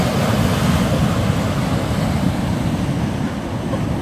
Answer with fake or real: real